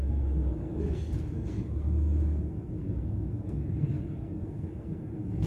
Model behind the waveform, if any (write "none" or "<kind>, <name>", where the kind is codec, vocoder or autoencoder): codec, SNAC